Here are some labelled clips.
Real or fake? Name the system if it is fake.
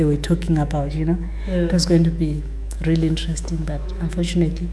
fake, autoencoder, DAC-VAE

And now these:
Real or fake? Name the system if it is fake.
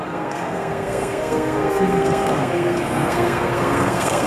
fake, codec, SNAC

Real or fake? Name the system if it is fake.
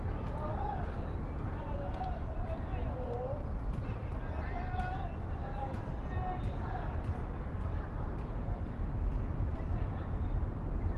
real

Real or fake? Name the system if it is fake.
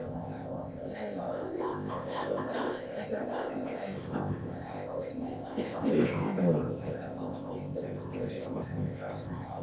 fake, codec, ZipCodec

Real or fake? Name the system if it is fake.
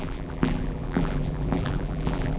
fake, vocoder, BigVGAN v2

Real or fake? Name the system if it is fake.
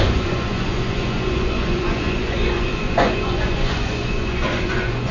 fake, vocoder, Vocos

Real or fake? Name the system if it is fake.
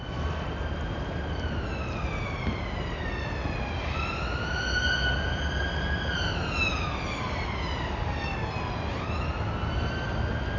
real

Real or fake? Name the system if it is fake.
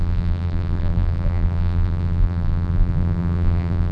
fake, vocoder, BigVGAN v2